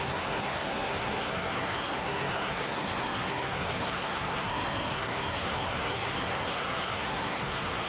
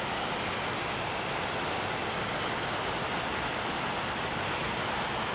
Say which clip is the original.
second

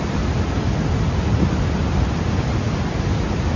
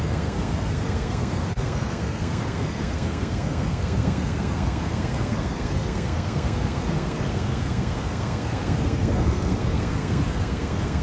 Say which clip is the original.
first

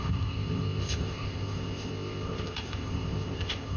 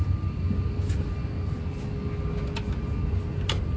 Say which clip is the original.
second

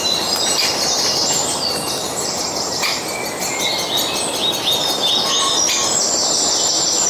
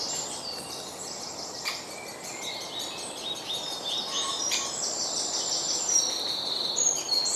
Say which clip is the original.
first